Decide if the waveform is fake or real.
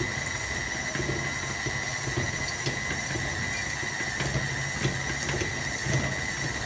real